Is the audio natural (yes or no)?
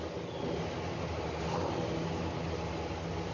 yes